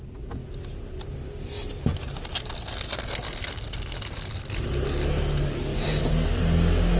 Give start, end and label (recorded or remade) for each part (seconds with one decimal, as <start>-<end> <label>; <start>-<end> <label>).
0.0-5.7 recorded; 5.7-6.4 remade; 6.4-7.0 recorded